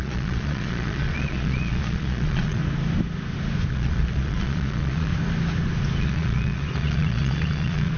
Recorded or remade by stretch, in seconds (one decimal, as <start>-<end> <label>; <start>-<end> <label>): 0.0-2.6 remade; 2.6-3.7 recorded; 3.7-5.1 remade; 5.1-6.0 recorded; 6.0-8.0 remade